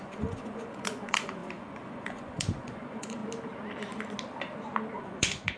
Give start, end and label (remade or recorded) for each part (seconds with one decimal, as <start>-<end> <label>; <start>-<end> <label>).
0.0-3.2 remade; 3.2-5.0 recorded; 5.0-5.6 remade